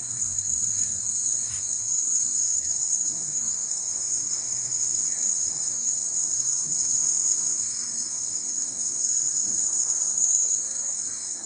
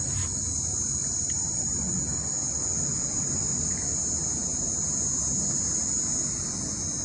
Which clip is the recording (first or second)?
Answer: second